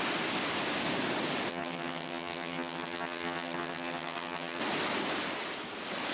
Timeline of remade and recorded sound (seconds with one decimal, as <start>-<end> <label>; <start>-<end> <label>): 0.0-1.5 recorded; 1.5-4.6 remade; 4.6-6.1 recorded